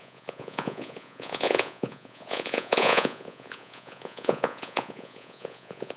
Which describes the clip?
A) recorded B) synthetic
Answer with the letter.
B